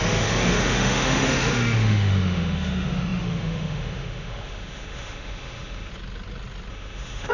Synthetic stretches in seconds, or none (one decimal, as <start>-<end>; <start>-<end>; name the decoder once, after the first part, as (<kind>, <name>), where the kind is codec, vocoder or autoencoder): 0.0-5.9 (autoencoder, DAC-VAE); 6.7-7.3